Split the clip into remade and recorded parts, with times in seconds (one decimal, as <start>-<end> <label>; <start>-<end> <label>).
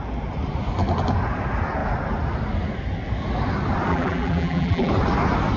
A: 0.0-3.9 recorded; 3.9-4.9 remade; 4.9-5.6 recorded